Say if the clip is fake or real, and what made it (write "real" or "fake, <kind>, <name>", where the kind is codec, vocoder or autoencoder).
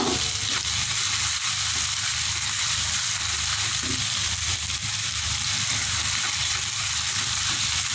fake, vocoder, BigVGAN v2